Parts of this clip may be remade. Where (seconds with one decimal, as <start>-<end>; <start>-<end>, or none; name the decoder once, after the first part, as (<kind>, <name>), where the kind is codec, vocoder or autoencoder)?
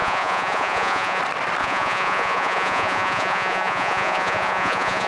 0.0-1.2 (vocoder, Vocos); 1.6-5.1